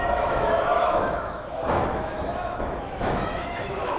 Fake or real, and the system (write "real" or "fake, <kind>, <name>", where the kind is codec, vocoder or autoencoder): fake, autoencoder, DAC-VAE